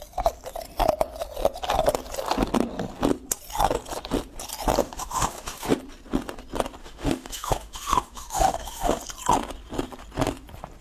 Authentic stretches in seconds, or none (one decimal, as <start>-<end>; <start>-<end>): 0.0-4.8; 5.8-6.8; 9.0-10.8